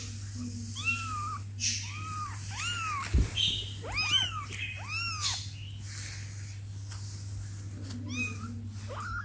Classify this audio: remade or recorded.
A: recorded